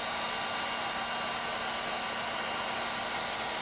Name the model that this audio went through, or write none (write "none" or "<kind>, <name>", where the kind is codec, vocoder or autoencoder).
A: none